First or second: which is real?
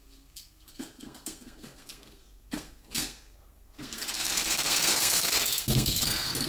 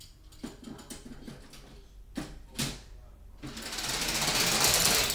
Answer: second